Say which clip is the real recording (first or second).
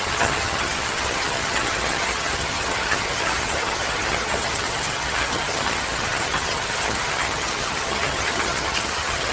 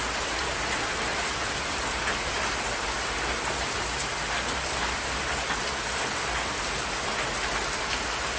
second